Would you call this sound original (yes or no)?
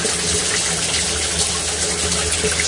yes